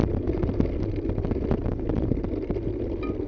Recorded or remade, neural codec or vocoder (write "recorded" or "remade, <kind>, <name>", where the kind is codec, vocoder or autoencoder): recorded